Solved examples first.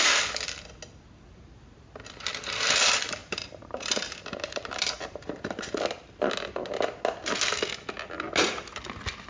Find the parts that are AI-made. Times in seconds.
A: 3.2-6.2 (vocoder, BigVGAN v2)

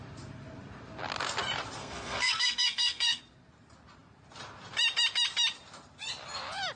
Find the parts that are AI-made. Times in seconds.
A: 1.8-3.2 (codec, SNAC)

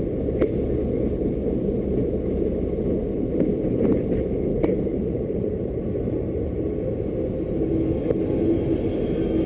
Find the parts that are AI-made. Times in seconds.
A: 4.5-7.0 (vocoder, BigVGAN v2)

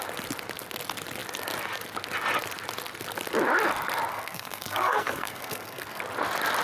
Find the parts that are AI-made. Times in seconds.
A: 4.1-6.0 (codec, SNAC)

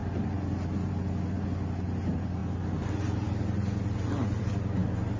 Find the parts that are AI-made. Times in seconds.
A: none

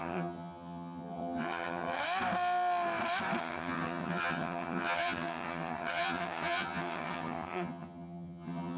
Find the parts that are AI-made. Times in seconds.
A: 0.0-2.0 (vocoder, HiFi-GAN); 3.4-8.8

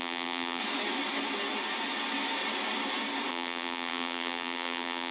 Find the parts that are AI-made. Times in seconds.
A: 0.0-0.6 (vocoder, BigVGAN v2); 3.3-5.1